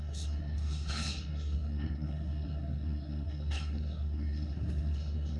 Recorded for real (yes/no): no